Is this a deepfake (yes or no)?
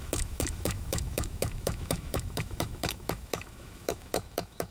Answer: yes